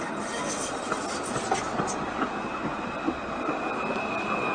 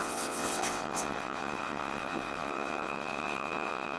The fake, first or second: second